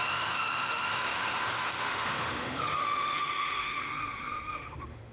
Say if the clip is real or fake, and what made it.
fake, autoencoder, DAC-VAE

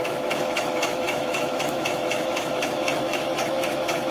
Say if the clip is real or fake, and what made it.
fake, autoencoder, DAC-VAE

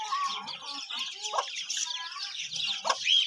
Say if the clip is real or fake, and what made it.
real